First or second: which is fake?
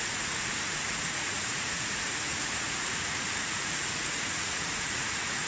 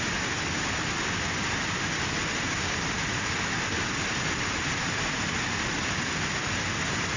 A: first